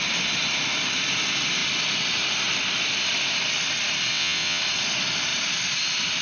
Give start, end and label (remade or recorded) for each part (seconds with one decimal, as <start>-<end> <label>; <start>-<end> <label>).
0.0-4.1 recorded; 4.1-4.6 remade; 4.6-6.2 recorded